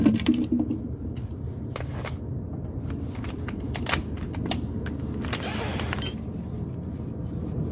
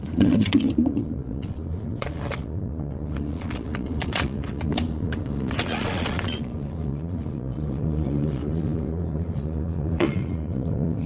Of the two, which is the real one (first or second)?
first